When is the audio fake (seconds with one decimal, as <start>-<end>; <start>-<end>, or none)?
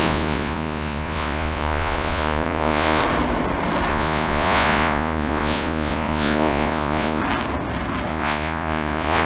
0.0-3.0; 3.9-7.2; 8.1-9.3